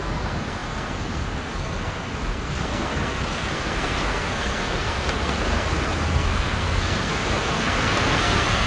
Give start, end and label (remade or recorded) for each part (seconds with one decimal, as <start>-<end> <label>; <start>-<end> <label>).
0.0-8.7 remade